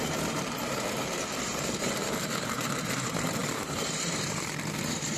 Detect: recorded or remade remade